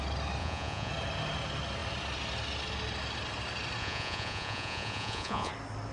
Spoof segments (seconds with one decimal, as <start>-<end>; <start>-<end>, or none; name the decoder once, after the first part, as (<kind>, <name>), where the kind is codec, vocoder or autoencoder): 0.4-0.9 (vocoder, Vocos); 3.8-5.5